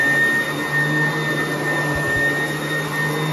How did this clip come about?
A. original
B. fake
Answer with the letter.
A